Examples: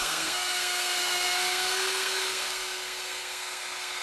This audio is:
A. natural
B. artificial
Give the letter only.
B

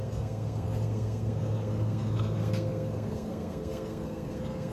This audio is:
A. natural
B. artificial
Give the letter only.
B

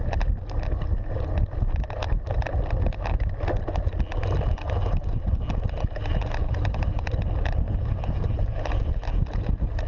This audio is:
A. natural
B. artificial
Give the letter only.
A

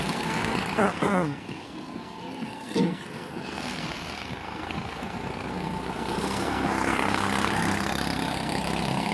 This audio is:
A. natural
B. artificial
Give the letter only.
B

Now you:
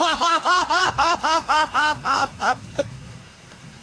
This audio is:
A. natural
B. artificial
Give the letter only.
B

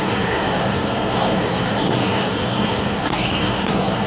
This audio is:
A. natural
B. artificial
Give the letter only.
B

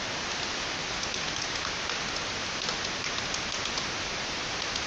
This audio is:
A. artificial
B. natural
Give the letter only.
B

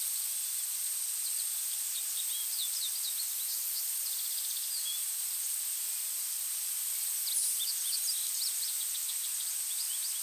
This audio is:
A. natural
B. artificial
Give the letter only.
A